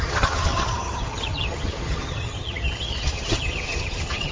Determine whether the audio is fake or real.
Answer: fake